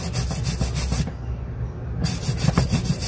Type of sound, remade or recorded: recorded